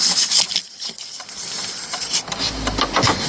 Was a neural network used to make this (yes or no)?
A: no